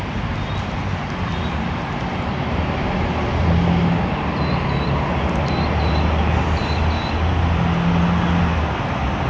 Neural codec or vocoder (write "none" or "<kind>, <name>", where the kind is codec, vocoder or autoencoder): none